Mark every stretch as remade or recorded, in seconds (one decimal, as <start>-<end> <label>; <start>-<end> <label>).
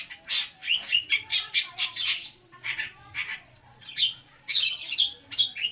0.0-1.3 recorded; 1.3-4.7 remade; 4.7-5.7 recorded